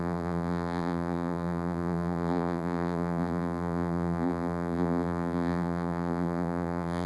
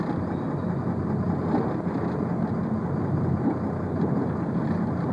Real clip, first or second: second